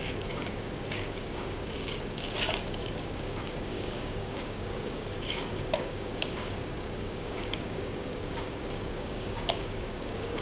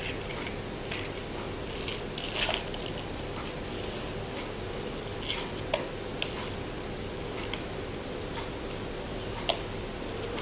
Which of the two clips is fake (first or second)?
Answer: first